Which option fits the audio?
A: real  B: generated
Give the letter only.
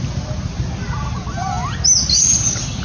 A